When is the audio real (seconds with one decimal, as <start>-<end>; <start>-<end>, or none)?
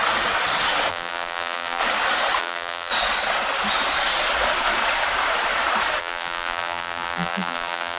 0.0-0.9; 1.8-2.4; 2.9-6.0